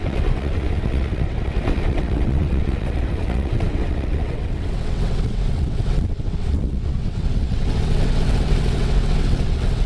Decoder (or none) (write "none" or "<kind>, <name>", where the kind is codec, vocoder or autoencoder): vocoder, WaveNeXt